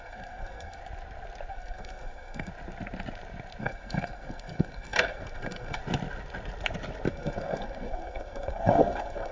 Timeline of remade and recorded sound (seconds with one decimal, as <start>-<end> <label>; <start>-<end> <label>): 0.0-0.8 remade; 0.8-1.5 recorded; 1.5-2.5 remade; 2.5-3.6 recorded; 3.6-5.8 remade; 5.8-7.1 recorded; 7.1-9.3 remade